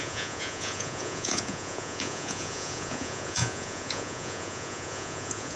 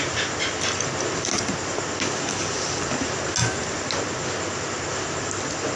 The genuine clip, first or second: second